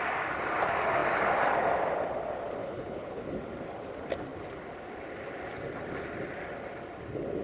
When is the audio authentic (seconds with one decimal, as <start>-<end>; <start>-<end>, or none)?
0.0-2.6; 3.2-7.4